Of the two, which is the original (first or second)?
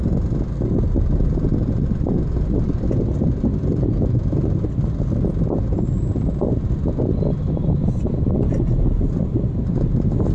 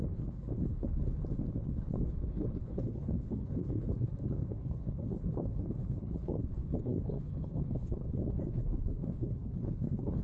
first